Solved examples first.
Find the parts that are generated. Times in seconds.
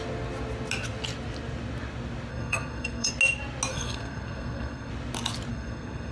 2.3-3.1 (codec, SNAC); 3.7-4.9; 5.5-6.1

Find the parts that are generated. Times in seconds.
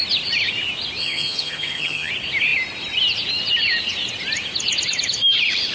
1.0-2.1 (vocoder, HiFi-GAN)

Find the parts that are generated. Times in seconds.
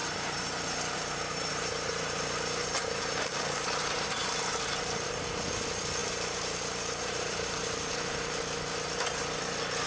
0.0-5.1 (vocoder, BigVGAN v2); 6.0-8.4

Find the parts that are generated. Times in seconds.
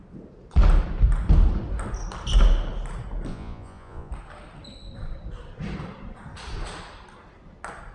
3.3-4.1 (vocoder, Vocos)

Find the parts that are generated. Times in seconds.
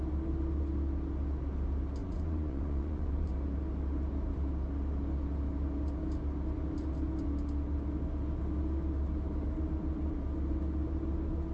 2.0-3.3 (vocoder, Vocos)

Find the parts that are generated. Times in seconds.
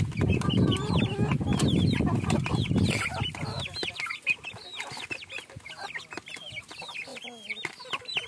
none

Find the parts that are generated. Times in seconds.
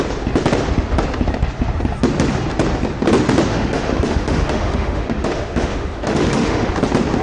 3.5-6.7 (autoencoder, DAC-VAE)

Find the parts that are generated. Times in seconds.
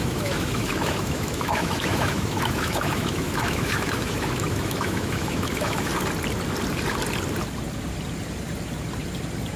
0.0-5.9 (autoencoder, DAC-VAE)